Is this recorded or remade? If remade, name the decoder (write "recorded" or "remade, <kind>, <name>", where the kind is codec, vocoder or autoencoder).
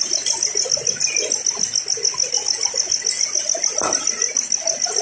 recorded